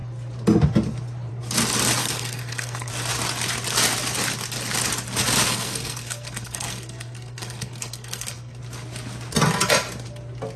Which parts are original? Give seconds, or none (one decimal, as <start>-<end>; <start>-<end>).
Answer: 0.0-2.0; 2.9-5.5; 8.6-10.6